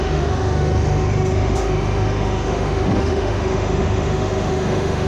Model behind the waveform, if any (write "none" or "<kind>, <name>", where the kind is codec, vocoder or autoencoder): autoencoder, DAC-VAE